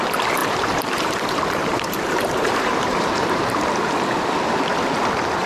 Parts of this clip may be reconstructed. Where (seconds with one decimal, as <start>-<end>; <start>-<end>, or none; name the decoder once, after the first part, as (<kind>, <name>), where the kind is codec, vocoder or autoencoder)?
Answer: 0.4-3.7 (vocoder, BigVGAN v2)